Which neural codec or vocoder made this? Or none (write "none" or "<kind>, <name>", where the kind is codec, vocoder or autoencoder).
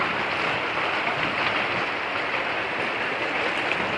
none